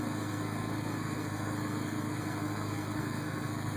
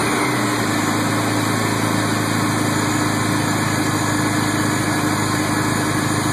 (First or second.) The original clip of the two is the second